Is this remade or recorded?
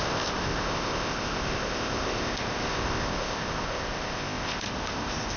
remade